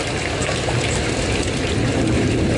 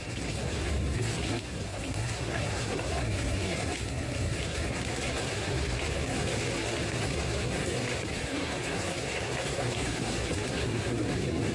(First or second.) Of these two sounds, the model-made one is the second